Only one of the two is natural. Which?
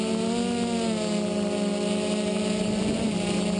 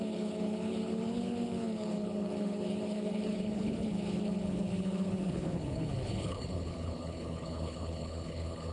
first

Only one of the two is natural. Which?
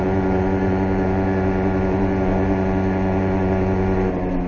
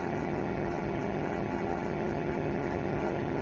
first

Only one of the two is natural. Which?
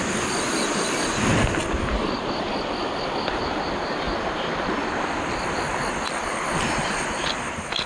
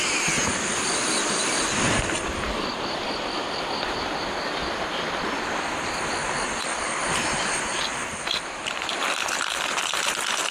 first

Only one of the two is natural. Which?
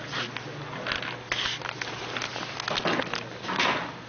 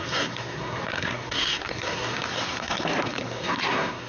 first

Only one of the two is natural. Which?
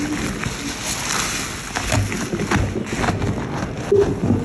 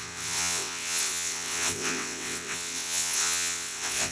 first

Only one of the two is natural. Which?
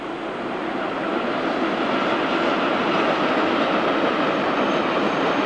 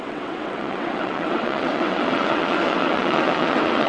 first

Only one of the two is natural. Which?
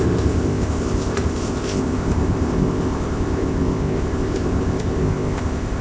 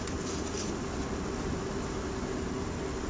second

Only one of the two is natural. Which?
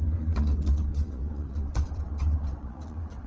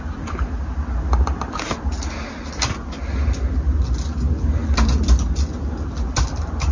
second